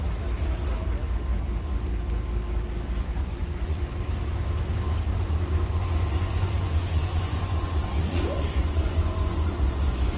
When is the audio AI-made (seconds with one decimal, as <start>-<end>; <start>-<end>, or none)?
3.2-3.9; 5.1-10.2